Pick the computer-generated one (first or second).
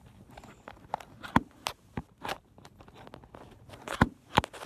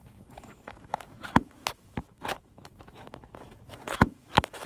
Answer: second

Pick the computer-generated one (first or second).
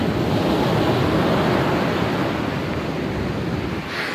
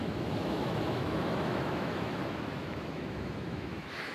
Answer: second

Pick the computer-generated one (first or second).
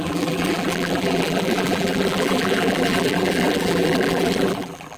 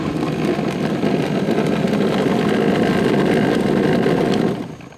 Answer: first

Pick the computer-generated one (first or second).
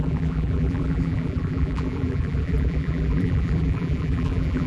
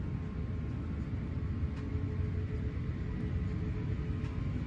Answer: first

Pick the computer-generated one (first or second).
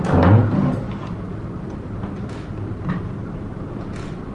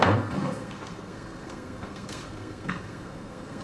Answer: second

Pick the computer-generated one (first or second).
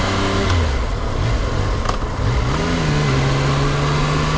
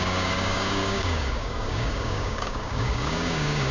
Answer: second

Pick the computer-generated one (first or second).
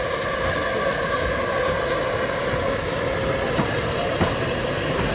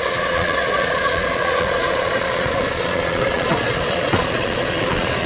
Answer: second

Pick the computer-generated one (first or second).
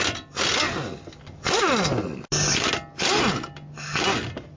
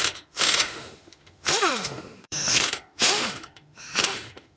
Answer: second